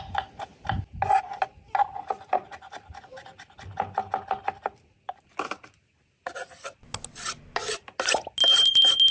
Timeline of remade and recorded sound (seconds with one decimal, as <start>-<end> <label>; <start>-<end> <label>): 0.0-9.1 recorded

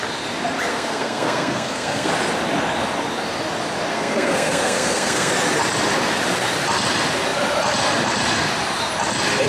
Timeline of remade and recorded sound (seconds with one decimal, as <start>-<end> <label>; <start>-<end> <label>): 0.0-0.7 recorded; 0.7-2.1 remade; 2.1-3.9 recorded; 3.9-5.3 remade; 5.3-9.5 recorded

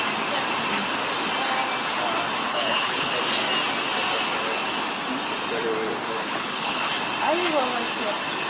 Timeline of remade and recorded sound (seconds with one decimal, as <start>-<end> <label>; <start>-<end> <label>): 0.0-2.5 recorded; 2.5-3.1 remade; 3.1-6.2 recorded; 6.2-6.9 remade; 6.9-8.5 recorded

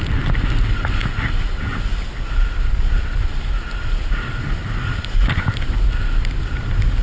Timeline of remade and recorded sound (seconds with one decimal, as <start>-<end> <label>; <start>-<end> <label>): 0.0-7.0 recorded

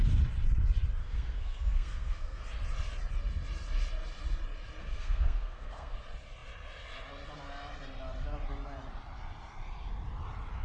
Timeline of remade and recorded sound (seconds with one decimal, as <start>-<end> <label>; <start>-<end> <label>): 0.0-1.0 recorded; 1.0-2.4 remade; 2.4-4.8 recorded; 4.8-6.0 remade; 6.0-10.6 recorded